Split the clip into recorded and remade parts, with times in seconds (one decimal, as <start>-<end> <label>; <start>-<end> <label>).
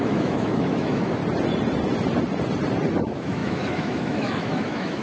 0.0-1.2 remade; 1.2-3.0 recorded; 3.0-5.0 remade